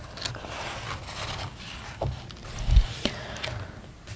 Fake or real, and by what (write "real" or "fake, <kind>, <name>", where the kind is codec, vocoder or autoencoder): real